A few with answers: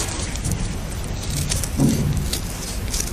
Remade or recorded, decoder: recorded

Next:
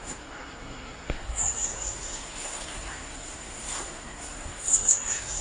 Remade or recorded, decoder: remade, codec, SNAC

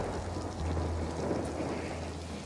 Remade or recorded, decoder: recorded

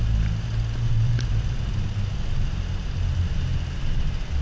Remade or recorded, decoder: recorded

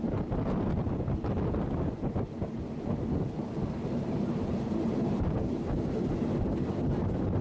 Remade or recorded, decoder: recorded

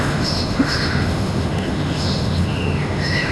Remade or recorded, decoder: remade, autoencoder, DAC-VAE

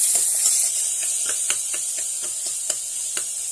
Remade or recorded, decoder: recorded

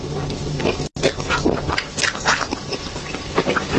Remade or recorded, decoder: recorded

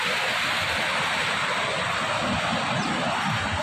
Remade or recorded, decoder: recorded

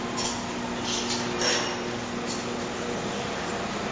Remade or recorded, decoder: recorded